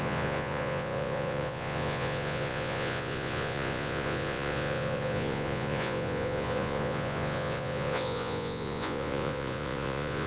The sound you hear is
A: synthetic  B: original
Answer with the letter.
A